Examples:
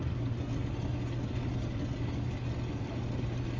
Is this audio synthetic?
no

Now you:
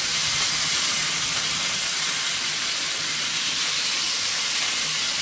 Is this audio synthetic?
yes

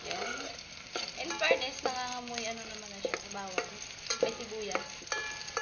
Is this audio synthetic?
no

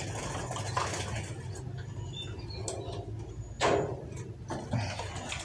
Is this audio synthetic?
no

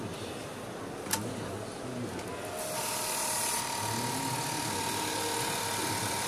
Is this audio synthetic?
no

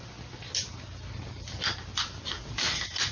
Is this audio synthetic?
no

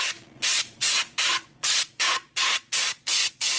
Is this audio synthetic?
yes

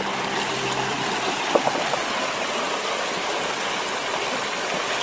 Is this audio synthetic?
no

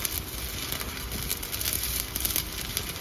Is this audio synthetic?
no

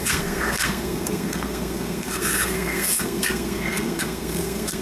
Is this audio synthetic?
yes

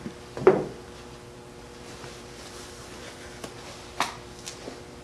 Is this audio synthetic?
no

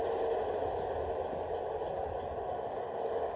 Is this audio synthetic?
no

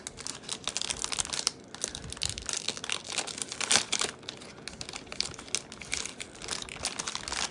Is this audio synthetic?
no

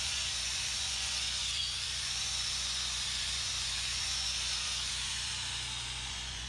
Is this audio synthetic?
yes